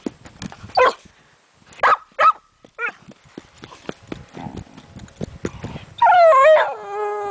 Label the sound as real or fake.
real